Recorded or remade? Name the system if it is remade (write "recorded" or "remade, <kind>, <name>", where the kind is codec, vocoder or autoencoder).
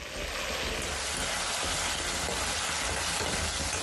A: recorded